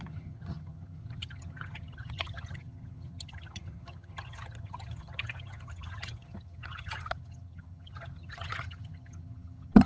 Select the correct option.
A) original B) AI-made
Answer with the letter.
B